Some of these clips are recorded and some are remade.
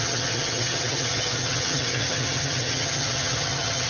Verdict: remade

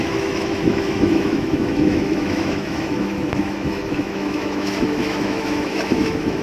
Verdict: remade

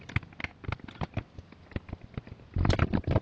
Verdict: recorded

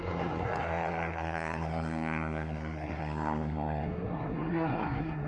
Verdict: remade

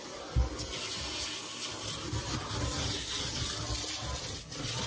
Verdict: recorded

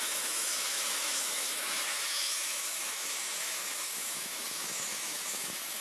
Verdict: remade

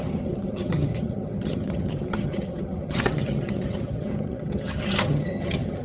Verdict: remade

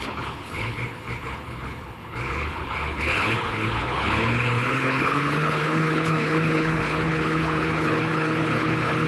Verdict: remade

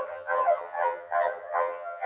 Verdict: remade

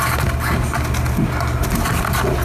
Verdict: recorded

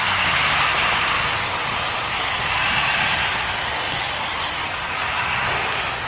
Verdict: recorded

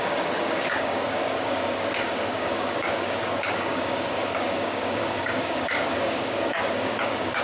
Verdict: remade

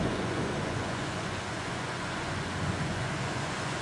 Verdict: remade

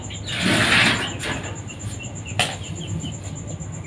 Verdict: recorded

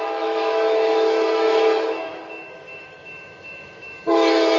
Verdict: remade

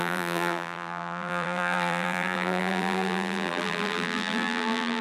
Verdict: remade